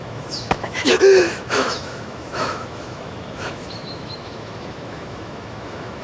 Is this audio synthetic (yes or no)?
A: yes